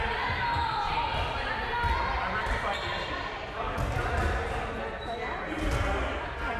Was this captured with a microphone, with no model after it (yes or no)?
yes